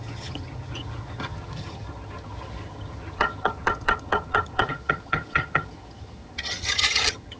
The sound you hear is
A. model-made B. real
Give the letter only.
A